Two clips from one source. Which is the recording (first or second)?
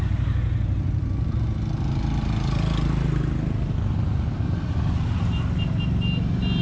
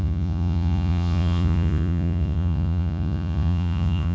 first